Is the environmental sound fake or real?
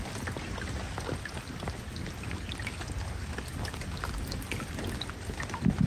real